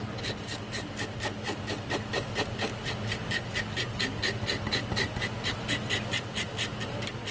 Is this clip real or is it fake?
real